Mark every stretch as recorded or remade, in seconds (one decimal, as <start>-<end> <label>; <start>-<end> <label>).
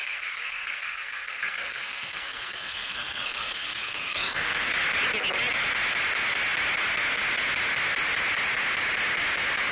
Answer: 0.0-4.7 remade; 4.7-9.7 recorded